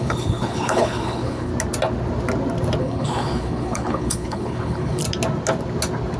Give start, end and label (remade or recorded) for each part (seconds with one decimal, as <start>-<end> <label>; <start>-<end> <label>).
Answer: 0.0-1.5 remade; 1.5-2.8 recorded; 2.8-5.0 remade; 5.0-6.2 recorded